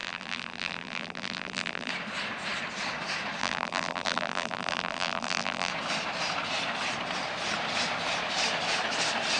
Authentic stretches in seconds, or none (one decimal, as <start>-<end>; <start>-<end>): 1.9-3.4; 5.7-9.4